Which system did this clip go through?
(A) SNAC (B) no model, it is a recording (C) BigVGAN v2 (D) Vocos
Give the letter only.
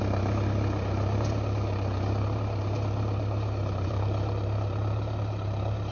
C